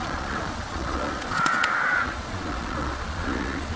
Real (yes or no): no